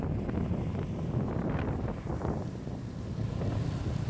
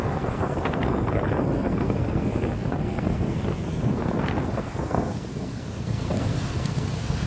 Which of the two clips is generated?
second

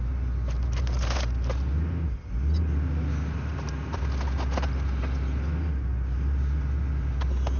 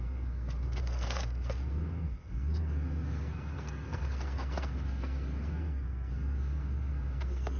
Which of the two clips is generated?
second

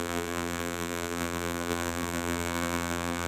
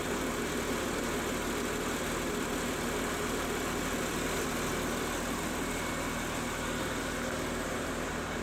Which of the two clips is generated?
first